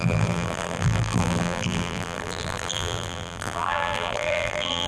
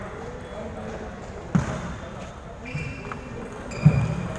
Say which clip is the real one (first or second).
second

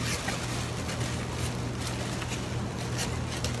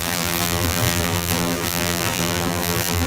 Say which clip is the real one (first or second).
first